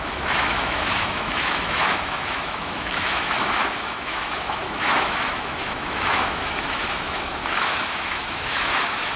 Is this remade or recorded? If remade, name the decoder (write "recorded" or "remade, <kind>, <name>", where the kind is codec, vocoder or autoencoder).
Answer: remade, autoencoder, DAC-VAE